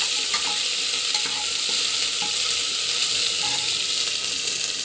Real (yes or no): yes